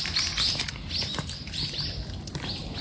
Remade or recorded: recorded